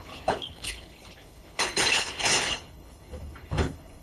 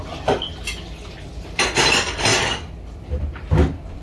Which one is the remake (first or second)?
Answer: first